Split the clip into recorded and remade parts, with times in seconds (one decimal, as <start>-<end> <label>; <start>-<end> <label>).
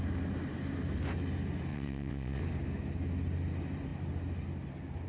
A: 0.0-1.7 recorded; 1.7-2.4 remade; 2.4-5.1 recorded